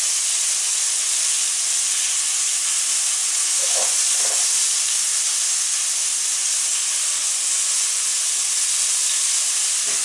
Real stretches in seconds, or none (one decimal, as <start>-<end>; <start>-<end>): 0.0-3.2; 4.0-7.2; 8.2-10.0